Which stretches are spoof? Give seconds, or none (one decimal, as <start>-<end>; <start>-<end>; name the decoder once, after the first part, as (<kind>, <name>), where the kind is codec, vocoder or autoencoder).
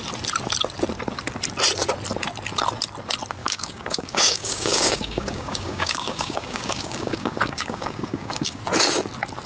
3.4-8.6 (codec, DAC)